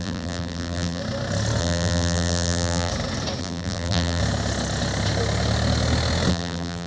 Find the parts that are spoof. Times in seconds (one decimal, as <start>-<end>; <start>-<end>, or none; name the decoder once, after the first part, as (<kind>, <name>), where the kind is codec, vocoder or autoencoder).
0.0-1.0 (vocoder, BigVGAN v2); 1.6-2.9; 3.4-4.2; 6.3-6.9

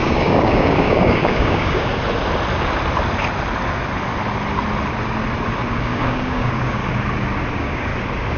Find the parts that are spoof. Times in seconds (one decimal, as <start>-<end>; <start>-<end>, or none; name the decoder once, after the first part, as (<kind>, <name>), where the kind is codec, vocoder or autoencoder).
0.0-1.9 (codec, DAC); 5.6-6.8; 7.5-7.9

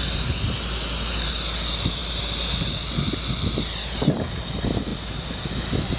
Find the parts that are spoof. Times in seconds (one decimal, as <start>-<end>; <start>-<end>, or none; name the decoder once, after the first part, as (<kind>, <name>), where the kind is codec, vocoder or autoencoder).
none

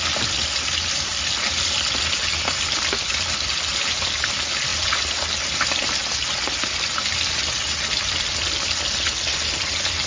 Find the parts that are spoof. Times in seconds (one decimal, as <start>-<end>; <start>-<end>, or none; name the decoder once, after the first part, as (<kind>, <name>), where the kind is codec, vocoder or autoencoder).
none

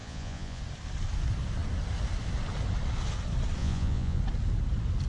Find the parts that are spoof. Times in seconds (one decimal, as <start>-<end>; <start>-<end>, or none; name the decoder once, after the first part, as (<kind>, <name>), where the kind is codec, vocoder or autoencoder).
0.0-0.6 (vocoder, Vocos); 3.6-4.2